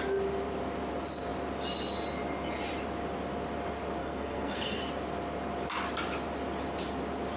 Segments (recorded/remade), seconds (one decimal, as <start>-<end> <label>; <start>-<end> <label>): 0.0-4.0 recorded; 4.0-4.8 remade; 4.8-7.4 recorded